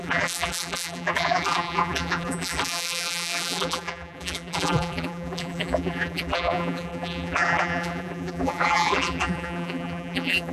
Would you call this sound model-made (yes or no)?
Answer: yes